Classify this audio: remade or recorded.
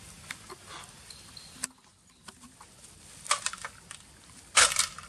recorded